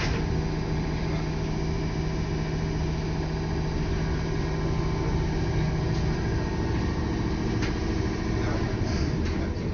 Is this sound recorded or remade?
recorded